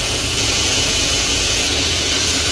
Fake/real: fake